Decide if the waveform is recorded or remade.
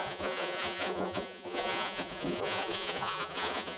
remade